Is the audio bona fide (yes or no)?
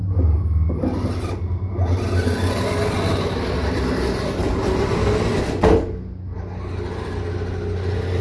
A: yes